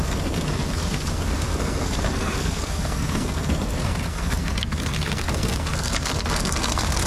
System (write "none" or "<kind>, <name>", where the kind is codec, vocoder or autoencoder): codec, SNAC